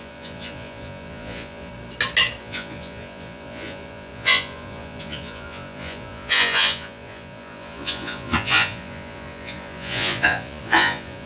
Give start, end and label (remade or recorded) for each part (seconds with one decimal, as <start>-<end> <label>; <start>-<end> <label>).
0.0-1.7 remade; 1.7-2.4 recorded; 2.4-11.3 remade